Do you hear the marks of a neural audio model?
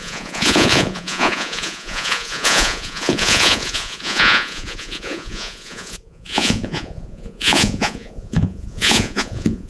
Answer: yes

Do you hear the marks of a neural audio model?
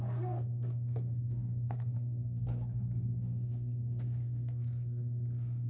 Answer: yes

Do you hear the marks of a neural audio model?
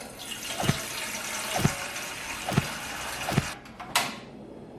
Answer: no